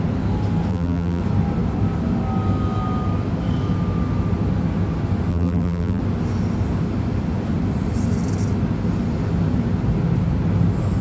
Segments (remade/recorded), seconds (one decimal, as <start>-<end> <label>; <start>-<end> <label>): 0.0-0.7 recorded; 0.7-1.2 remade; 1.2-5.3 recorded; 5.3-6.0 remade; 6.0-11.0 recorded